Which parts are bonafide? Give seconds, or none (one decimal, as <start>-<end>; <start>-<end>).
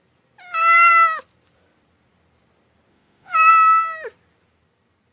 0.0-2.9; 3.5-5.1